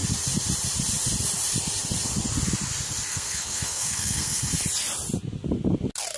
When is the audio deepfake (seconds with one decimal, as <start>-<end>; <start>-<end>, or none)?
3.1-4.4